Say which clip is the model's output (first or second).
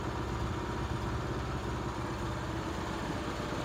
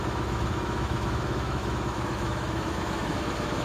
second